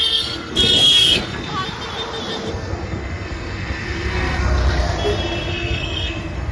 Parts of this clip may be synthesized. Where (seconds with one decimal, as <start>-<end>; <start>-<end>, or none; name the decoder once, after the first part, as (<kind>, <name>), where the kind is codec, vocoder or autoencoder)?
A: 0.0-1.5 (codec, SNAC); 2.5-4.6; 5.5-6.5